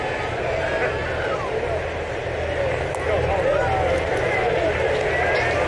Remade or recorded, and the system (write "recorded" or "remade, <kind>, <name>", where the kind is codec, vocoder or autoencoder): recorded